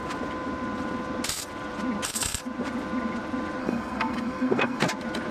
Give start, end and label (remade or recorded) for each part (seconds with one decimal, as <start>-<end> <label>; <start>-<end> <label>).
0.0-3.6 recorded; 3.6-4.8 remade; 4.8-5.3 recorded